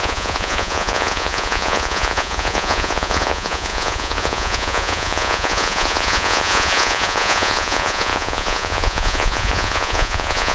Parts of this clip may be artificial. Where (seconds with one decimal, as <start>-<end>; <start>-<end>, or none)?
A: 0.0-10.5